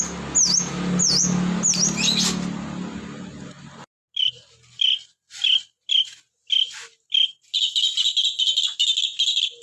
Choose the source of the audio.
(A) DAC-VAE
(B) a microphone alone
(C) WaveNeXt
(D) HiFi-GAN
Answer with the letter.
B